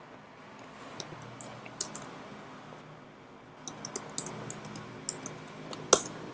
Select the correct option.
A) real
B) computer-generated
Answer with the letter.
A